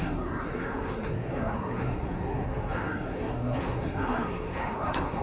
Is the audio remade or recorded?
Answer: remade